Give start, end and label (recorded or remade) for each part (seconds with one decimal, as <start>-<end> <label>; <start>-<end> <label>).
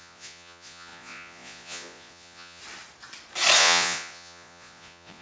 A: 0.0-2.6 remade; 2.6-3.6 recorded; 3.6-5.2 remade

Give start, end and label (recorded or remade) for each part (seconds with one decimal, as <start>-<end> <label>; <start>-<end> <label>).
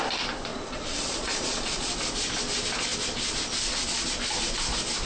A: 0.0-0.5 recorded; 0.5-1.9 remade; 1.9-5.1 recorded